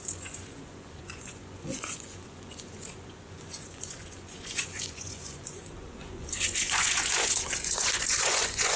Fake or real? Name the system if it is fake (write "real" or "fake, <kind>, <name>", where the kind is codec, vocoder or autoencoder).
fake, vocoder, Vocos